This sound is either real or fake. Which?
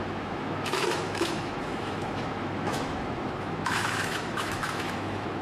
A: fake